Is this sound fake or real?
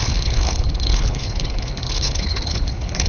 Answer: fake